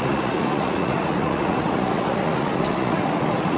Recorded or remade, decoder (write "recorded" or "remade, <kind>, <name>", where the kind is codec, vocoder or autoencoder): remade, vocoder, Vocos